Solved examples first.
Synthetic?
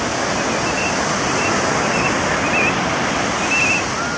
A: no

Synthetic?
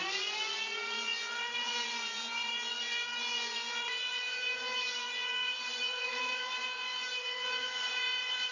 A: yes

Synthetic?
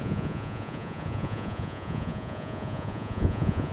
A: yes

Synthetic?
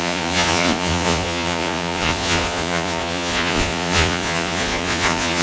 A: yes